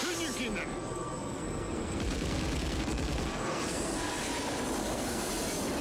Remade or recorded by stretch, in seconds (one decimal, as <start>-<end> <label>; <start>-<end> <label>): 0.0-0.8 recorded; 0.8-4.3 remade; 4.3-4.8 recorded; 4.8-5.3 remade; 5.3-5.8 recorded